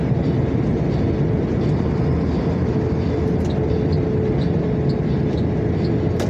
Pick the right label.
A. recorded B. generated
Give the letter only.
A